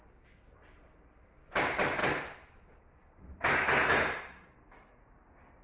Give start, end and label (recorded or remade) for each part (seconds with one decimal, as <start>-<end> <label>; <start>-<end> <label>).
0.0-5.6 recorded